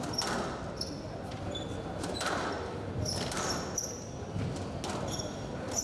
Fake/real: real